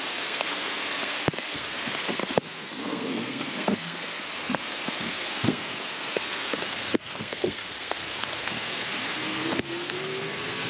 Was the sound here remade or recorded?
remade